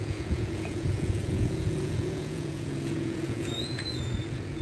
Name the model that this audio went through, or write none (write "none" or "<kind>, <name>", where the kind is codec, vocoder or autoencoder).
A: vocoder, Vocos